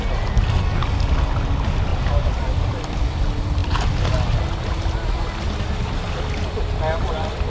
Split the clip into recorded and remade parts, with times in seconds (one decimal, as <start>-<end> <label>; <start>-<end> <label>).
0.0-1.9 recorded; 1.9-3.2 remade; 3.2-7.5 recorded